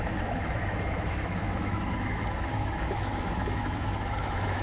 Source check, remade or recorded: remade